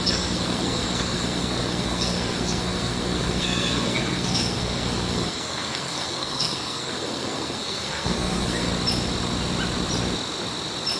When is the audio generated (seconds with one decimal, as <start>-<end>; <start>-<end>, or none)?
0.0-8.7